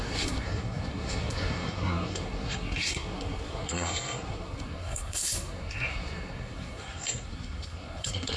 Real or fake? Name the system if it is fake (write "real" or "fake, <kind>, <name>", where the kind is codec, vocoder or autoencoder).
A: fake, codec, SNAC